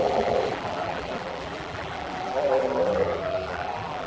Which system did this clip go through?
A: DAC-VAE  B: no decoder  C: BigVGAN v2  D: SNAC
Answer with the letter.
C